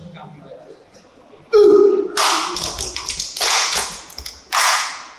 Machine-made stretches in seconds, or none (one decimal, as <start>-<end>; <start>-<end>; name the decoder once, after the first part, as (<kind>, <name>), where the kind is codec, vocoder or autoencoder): 3.1-5.2 (vocoder, Vocos)